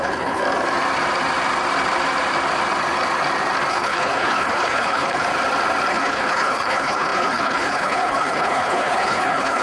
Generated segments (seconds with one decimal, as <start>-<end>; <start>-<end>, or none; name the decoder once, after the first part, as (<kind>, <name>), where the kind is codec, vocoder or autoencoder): 0.0-0.4 (codec, HILCodec); 3.7-5.3; 5.9-9.6